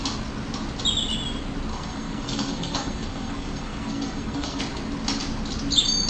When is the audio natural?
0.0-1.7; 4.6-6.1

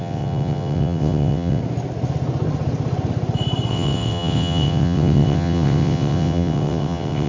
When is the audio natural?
1.6-3.7

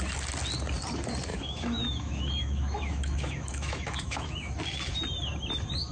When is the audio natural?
0.0-1.3; 4.5-5.9

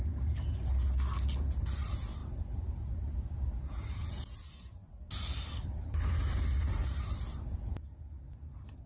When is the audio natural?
0.0-8.9

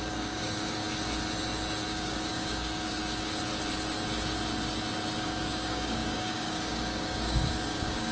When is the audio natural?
0.8-1.9; 3.0-5.2